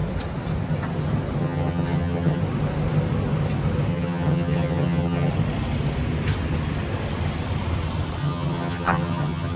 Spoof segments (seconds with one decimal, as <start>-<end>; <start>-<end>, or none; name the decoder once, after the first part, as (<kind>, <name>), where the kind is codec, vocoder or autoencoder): 1.4-2.4 (vocoder, HiFi-GAN); 3.9-5.3; 8.2-9.6

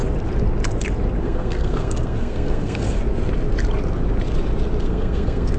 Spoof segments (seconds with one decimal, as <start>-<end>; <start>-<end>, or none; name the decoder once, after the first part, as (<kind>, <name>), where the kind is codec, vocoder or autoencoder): 1.2-3.0 (codec, SNAC); 4.8-5.6

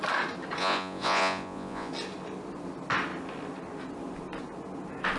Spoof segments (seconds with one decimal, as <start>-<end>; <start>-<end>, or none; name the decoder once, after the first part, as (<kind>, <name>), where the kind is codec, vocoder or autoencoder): 0.6-1.9 (vocoder, Vocos)

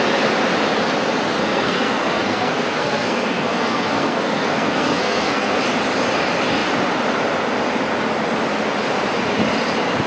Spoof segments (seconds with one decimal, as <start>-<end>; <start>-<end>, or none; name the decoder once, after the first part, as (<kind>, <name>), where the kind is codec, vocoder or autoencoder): 1.4-5.6 (codec, SNAC)